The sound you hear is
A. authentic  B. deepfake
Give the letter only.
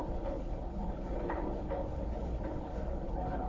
B